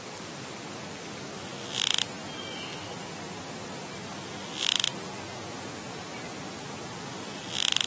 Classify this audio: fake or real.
real